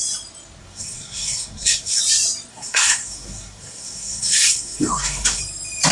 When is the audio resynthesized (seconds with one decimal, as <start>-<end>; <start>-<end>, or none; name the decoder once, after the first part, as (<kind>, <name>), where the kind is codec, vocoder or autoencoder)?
0.6-2.0 (codec, SNAC); 2.5-5.4